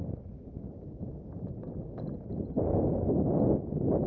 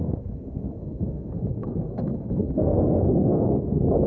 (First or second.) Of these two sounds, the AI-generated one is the second